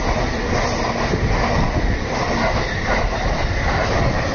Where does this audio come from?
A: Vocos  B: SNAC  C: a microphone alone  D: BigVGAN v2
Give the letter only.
C